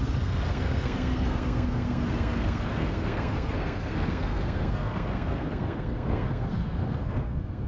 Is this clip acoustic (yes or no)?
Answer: no